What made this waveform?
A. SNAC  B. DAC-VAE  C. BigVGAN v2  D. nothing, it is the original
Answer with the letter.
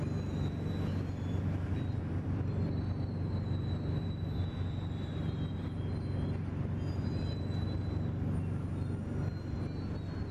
D